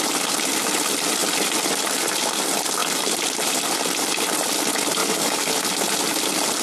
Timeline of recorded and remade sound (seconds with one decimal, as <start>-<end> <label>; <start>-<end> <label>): 0.0-5.0 recorded; 5.0-5.5 remade; 5.5-6.6 recorded